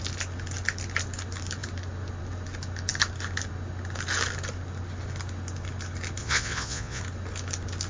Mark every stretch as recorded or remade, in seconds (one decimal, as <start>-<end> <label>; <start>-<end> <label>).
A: 0.0-6.2 recorded; 6.2-7.0 remade; 7.0-7.9 recorded